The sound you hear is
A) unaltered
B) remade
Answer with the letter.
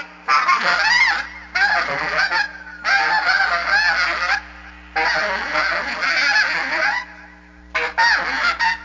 A